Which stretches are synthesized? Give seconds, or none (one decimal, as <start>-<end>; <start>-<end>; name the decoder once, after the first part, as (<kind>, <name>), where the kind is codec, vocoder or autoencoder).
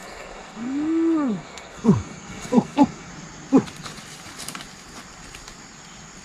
0.0-3.1 (codec, SNAC)